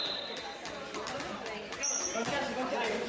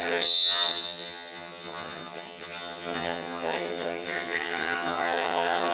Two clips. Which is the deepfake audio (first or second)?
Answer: second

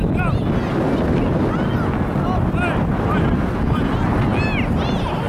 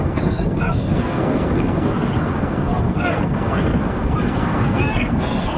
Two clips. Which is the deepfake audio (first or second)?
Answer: second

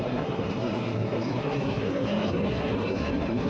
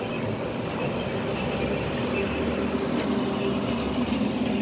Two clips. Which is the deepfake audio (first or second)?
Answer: first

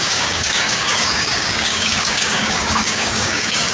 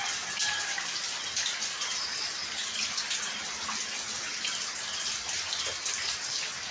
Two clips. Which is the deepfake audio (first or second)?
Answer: first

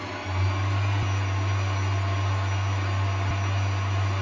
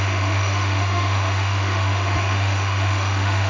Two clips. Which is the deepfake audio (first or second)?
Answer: second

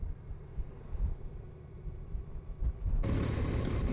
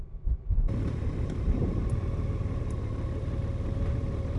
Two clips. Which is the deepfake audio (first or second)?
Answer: second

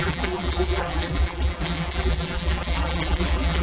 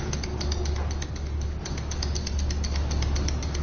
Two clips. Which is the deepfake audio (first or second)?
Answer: first